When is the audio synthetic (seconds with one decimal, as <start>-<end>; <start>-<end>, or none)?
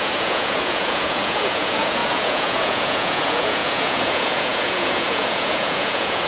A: 0.0-6.3